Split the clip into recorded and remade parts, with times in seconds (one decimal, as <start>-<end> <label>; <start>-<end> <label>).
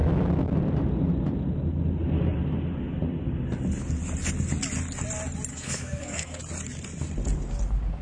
0.0-5.5 recorded; 5.5-6.4 remade; 6.4-8.0 recorded